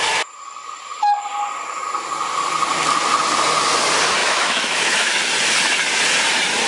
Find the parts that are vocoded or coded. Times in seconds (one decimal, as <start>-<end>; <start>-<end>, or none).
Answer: 4.2-5.2

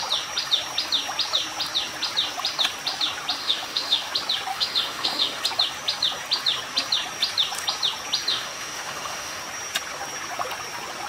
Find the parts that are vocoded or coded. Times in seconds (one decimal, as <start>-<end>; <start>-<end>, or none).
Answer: 3.4-4.1; 4.5-5.4; 8.3-9.4

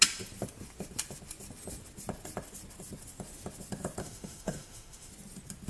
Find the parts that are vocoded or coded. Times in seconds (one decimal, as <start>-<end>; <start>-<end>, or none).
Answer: 4.0-5.1

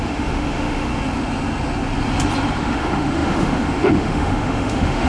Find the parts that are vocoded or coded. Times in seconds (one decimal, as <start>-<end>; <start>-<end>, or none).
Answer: 0.0-0.9; 2.6-5.1